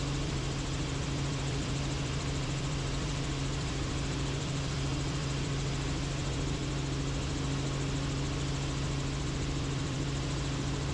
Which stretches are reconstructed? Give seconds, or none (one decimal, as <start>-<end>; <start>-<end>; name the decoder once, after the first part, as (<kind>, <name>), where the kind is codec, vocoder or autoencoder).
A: 0.0-6.6 (vocoder, BigVGAN v2); 9.2-10.9